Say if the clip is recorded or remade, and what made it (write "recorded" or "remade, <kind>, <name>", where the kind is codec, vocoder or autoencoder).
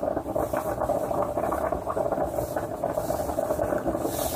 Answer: recorded